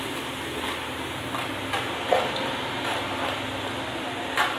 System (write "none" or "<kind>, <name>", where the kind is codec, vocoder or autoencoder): none